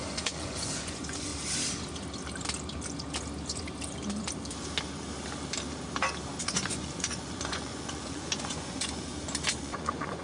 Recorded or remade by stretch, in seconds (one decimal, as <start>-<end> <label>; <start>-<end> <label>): 0.0-1.3 remade; 1.3-6.4 recorded; 6.4-9.1 remade; 9.1-9.6 recorded; 9.6-10.2 remade